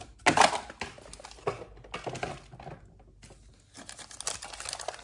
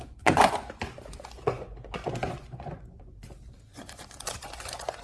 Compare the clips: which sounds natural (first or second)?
first